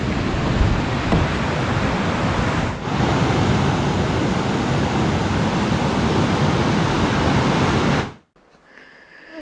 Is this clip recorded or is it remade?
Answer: recorded